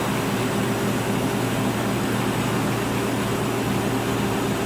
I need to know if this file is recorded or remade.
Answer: recorded